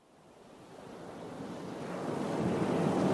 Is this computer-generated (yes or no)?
no